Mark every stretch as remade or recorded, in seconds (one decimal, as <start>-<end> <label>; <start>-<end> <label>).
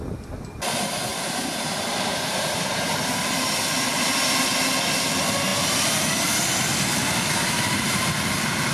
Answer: 0.0-1.1 recorded; 1.1-3.0 remade; 3.0-8.7 recorded